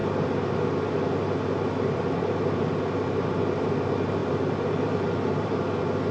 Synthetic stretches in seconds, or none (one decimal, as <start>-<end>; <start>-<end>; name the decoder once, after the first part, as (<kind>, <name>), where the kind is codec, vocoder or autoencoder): 4.2-5.5 (vocoder, BigVGAN v2)